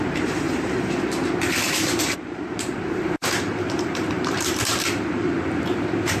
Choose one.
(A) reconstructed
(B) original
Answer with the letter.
A